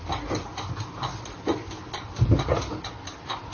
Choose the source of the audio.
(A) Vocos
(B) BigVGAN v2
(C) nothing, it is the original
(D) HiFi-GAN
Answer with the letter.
C